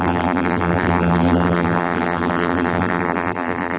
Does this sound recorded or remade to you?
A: remade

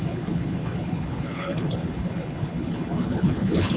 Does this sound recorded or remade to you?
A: remade